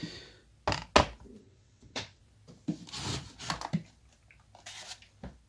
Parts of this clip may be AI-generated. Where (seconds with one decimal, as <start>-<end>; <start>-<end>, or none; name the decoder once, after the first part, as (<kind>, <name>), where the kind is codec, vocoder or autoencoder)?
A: 1.4-2.2 (vocoder, WaveNeXt)